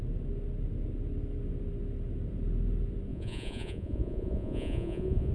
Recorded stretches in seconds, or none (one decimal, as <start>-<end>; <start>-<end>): 0.0-3.1